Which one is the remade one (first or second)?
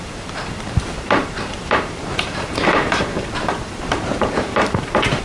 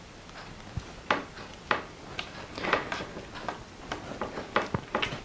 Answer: first